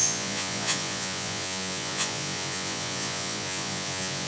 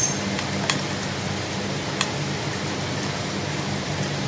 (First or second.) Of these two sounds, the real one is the second